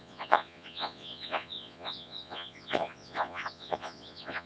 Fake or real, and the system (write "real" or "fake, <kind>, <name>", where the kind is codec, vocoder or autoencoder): fake, vocoder, Vocos